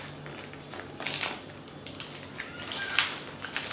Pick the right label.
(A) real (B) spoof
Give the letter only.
A